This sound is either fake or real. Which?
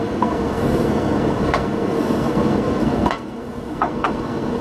fake